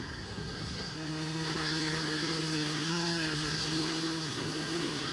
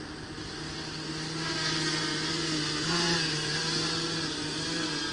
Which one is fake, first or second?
first